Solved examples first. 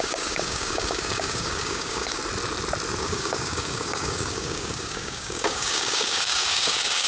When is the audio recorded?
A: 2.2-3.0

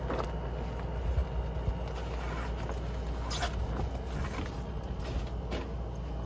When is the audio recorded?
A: 0.0-6.3